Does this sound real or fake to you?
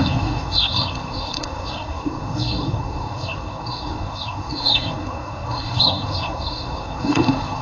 fake